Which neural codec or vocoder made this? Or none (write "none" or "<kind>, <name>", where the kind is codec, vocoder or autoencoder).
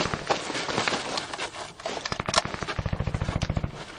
none